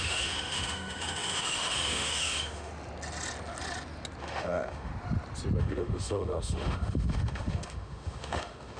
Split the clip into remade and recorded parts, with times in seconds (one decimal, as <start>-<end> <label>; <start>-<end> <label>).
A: 0.0-2.7 remade; 2.7-4.2 recorded; 4.2-4.9 remade; 4.9-5.6 recorded; 5.6-8.8 remade